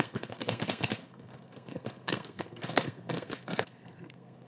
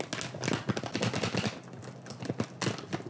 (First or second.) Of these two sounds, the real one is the second